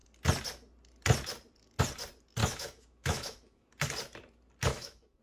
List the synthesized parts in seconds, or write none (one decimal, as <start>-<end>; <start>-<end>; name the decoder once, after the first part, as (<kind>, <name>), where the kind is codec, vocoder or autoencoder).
2.4-3.7 (autoencoder, DAC-VAE); 4.7-5.2